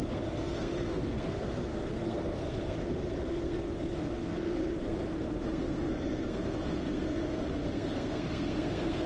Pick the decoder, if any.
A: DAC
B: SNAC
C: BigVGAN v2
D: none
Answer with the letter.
B